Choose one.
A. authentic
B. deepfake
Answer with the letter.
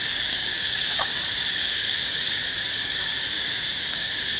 B